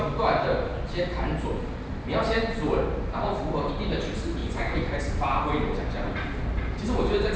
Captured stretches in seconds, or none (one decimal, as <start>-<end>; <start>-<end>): 0.0-4.4; 5.0-7.4